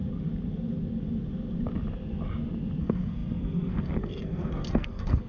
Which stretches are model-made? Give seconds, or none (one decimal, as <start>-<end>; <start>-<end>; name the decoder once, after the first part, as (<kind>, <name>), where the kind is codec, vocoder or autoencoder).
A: 2.8-5.3 (codec, SNAC)